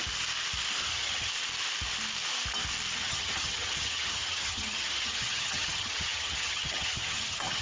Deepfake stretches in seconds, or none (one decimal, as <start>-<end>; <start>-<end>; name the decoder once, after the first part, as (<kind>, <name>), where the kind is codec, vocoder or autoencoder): 0.8-1.3 (vocoder, HiFi-GAN); 3.0-7.6